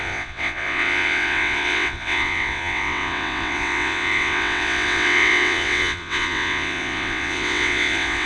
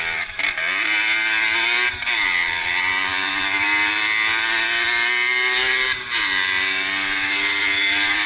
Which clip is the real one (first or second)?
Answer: second